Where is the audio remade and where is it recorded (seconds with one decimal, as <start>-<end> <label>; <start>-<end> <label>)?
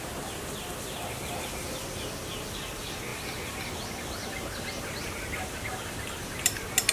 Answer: 0.0-6.9 recorded